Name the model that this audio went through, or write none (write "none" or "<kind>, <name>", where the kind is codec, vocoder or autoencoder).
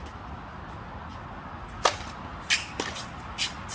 none